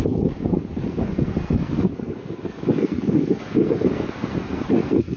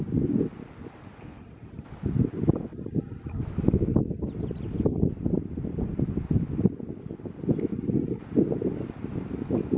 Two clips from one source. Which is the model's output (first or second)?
first